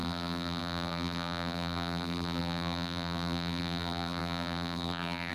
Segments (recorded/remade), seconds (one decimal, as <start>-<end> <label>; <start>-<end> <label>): 0.0-5.3 remade